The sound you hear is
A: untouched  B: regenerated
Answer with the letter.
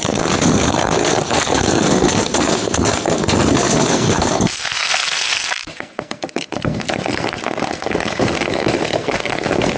B